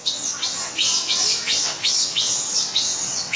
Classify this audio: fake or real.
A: fake